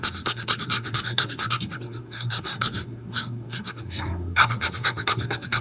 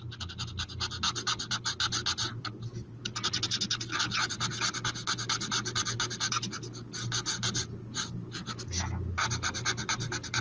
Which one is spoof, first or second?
first